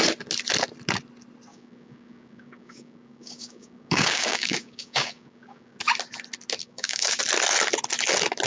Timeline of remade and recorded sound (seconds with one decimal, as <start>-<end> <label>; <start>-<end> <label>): 0.0-1.5 recorded; 1.5-5.8 remade; 5.8-6.6 recorded; 6.6-7.2 remade; 7.2-8.5 recorded